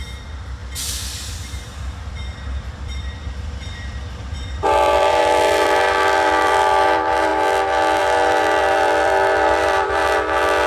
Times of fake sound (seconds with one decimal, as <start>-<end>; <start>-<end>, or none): 0.0-0.6; 1.3-7.3; 8.0-10.0